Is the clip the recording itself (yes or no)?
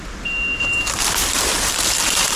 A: yes